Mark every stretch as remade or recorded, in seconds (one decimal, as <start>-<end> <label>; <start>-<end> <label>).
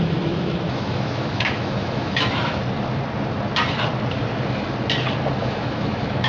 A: 0.0-2.6 remade; 2.6-5.4 recorded; 5.4-6.3 remade